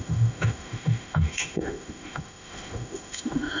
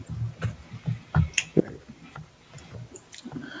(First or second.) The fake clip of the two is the first